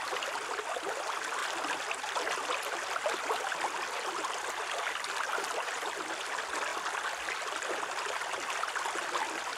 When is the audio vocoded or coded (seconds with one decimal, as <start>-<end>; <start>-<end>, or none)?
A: none